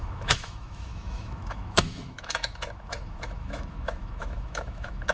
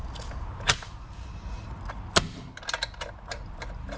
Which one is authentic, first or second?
second